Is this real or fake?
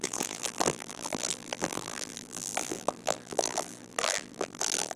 fake